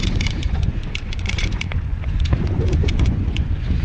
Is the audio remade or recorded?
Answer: remade